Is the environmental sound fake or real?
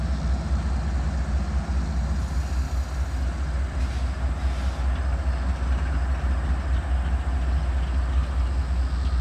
real